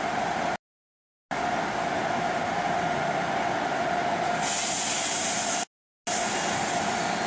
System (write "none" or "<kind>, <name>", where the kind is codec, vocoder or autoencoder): none